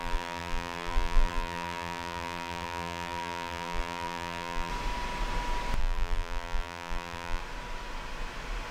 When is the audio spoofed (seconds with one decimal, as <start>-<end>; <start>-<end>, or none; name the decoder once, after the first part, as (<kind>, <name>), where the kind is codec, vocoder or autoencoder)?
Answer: 0.0-4.7 (vocoder, BigVGAN v2); 5.8-7.4